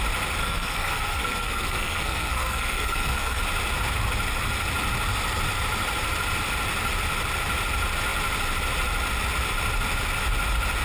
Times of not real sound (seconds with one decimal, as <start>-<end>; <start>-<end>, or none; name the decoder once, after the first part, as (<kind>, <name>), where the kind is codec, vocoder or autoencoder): 0.4-3.4 (codec, SNAC)